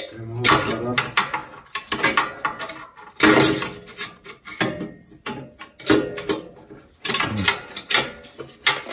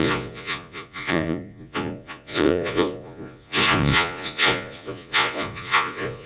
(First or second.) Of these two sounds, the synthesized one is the second